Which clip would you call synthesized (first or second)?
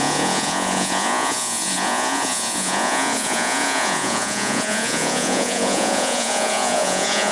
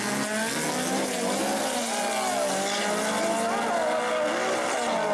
first